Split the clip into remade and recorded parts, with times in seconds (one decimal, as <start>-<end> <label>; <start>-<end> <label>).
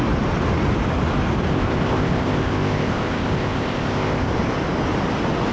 0.0-1.5 recorded; 1.5-4.3 remade; 4.3-5.5 recorded